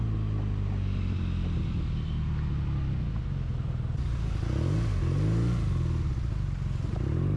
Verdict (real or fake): real